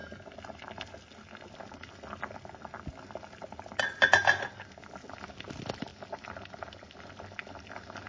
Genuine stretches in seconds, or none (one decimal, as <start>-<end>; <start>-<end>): 0.0-8.1